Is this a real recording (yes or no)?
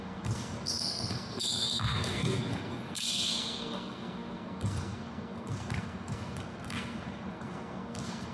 no